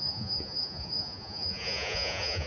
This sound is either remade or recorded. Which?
remade